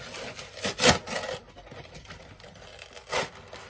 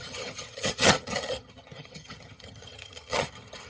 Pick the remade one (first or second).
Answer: second